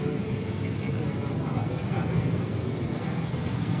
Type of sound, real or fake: fake